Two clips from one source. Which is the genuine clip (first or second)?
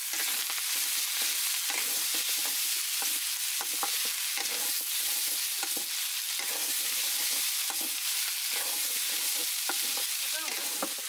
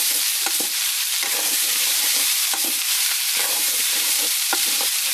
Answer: first